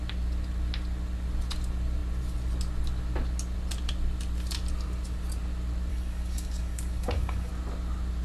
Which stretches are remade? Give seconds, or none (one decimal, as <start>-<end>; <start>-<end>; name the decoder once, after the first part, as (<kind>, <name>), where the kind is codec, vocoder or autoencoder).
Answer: 5.9-7.5 (codec, DAC)